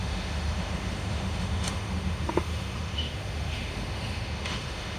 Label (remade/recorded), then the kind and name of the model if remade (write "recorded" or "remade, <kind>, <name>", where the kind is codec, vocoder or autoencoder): remade, autoencoder, DAC-VAE